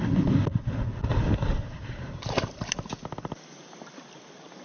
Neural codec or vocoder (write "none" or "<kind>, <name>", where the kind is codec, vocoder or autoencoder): vocoder, BigVGAN v2